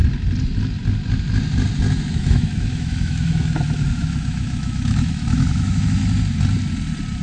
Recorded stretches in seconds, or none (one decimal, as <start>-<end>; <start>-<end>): 0.0-2.1; 6.0-7.2